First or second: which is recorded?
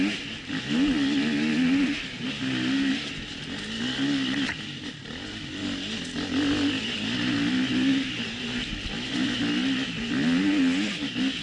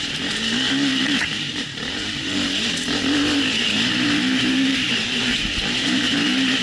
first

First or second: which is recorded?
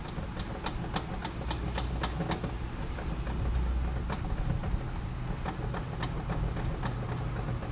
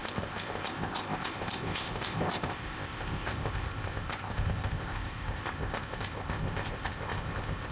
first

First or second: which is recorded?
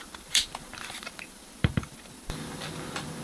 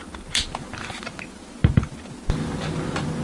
second